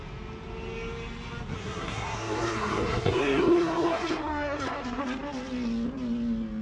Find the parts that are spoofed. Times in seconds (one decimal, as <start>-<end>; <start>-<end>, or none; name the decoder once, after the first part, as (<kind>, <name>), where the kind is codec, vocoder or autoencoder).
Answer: 1.6-5.0 (codec, SNAC)